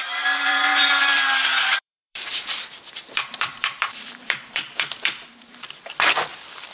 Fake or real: fake